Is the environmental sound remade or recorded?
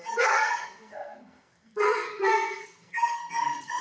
remade